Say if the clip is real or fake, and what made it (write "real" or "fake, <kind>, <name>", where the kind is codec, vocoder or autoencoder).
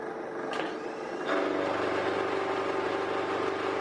real